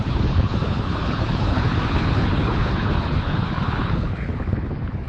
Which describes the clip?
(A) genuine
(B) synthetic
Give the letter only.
B